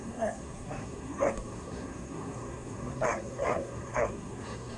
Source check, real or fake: fake